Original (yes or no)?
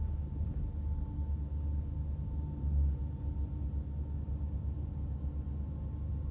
yes